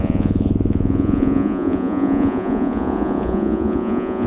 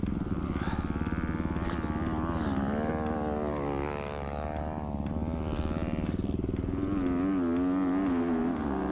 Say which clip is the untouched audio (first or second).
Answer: second